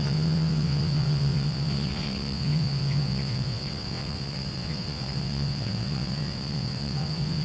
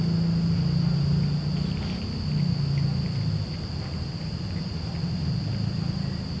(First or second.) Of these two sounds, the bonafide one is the second